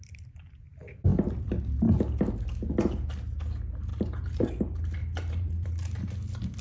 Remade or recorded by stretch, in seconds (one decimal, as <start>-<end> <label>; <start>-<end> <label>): 0.0-3.9 recorded; 3.9-4.6 remade; 4.6-5.0 recorded; 5.0-5.7 remade; 5.7-6.6 recorded